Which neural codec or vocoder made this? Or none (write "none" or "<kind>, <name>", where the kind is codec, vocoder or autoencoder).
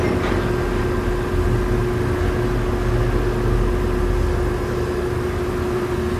none